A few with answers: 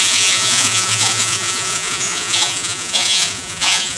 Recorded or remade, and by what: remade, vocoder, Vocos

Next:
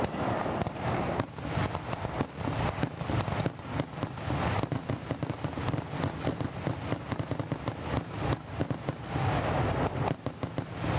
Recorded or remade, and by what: recorded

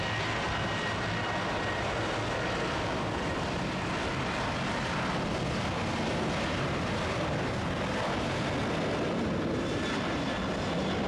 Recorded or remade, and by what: recorded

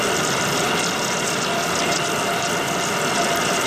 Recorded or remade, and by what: recorded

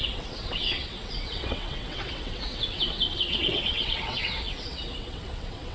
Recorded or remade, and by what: remade, vocoder, WaveNeXt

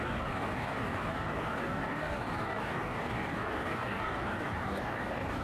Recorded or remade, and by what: remade, codec, DAC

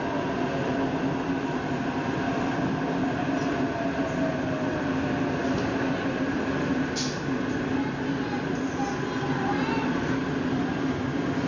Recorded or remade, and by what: recorded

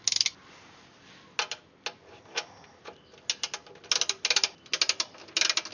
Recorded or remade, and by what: recorded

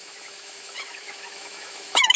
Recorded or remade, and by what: remade, autoencoder, DAC-VAE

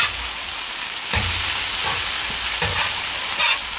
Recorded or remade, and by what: recorded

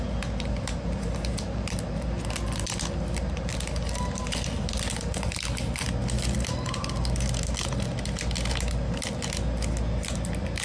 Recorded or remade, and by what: recorded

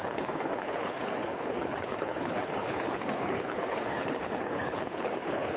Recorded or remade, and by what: remade, codec, HILCodec